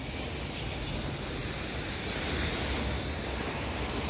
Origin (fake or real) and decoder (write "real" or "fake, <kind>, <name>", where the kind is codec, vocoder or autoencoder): real